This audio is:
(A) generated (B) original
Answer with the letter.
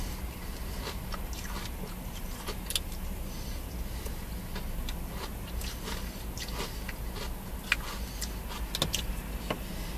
B